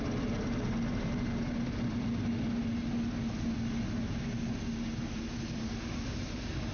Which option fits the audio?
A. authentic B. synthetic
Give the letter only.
A